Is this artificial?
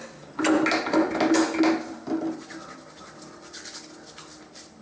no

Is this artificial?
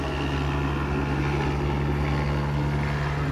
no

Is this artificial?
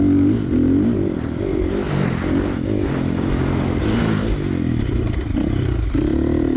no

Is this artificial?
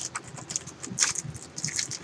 no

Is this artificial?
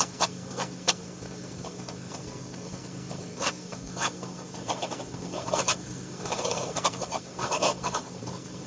yes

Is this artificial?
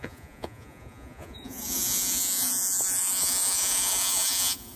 yes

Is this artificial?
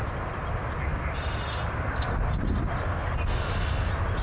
no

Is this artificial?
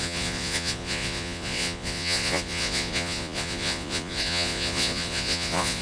yes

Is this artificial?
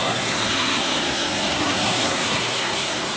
yes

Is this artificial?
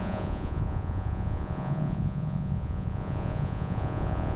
yes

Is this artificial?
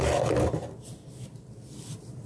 no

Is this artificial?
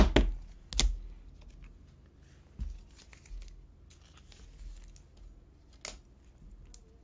no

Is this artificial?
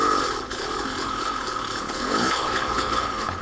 yes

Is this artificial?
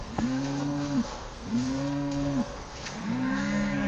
yes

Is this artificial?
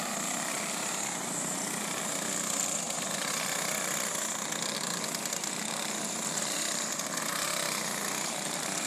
no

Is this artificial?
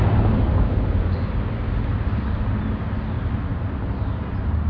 no